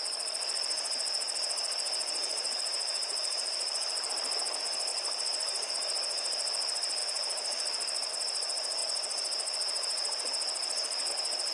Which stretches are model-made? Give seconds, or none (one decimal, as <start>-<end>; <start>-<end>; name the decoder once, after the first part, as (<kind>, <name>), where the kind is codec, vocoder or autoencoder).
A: 2.2-4.1 (vocoder, BigVGAN v2); 4.9-5.7; 7.0-8.1